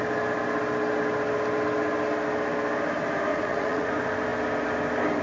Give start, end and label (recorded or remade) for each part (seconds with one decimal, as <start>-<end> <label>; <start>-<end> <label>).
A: 0.0-3.3 recorded; 3.3-3.9 remade; 3.9-5.2 recorded